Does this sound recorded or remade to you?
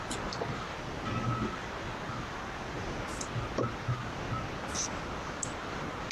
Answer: recorded